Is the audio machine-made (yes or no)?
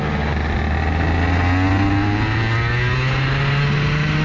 no